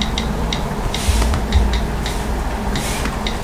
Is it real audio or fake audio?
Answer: real